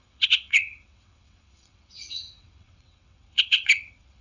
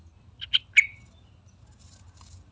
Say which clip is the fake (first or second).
first